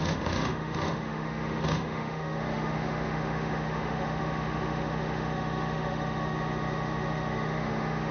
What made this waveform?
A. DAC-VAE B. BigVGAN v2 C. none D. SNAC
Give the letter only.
A